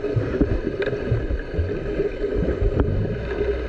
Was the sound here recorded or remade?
remade